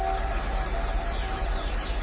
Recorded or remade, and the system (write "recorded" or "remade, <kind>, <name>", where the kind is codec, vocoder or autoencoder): recorded